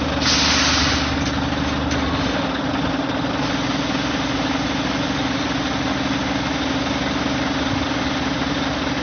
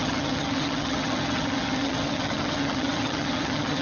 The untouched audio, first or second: first